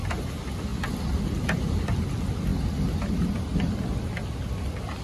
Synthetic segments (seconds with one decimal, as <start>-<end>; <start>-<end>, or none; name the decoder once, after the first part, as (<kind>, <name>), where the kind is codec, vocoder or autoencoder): none